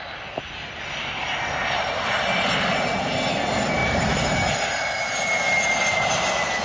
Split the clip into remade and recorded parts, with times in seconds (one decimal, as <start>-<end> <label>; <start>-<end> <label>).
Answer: 0.0-6.6 recorded